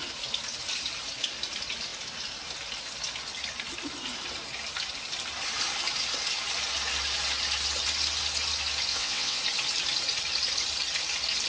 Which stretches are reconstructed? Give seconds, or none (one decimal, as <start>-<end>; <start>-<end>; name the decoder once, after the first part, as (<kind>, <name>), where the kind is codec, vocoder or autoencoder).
8.9-9.4 (vocoder, WaveNeXt)